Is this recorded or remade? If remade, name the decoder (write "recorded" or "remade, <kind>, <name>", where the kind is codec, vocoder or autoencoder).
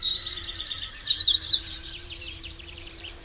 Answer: remade, vocoder, BigVGAN v2